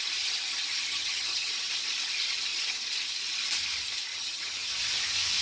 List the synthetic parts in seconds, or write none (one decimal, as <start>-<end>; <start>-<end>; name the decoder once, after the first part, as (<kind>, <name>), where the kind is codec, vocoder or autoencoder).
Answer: 0.9-1.5 (vocoder, HiFi-GAN); 4.1-4.7